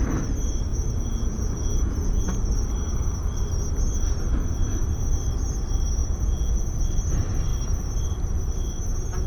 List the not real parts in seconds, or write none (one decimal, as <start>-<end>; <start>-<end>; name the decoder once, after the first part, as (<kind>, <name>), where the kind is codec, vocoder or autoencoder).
0.7-2.3 (vocoder, Vocos); 6.0-6.6